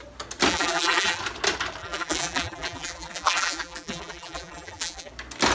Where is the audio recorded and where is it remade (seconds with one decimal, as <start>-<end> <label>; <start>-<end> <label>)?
0.0-0.5 recorded; 0.5-1.2 remade; 1.2-1.8 recorded; 1.8-5.1 remade; 5.1-5.5 recorded